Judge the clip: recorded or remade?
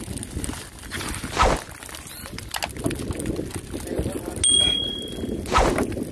recorded